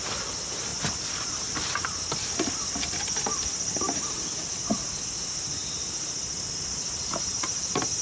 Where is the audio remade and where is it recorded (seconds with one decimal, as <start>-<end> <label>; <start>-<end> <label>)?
0.0-8.0 recorded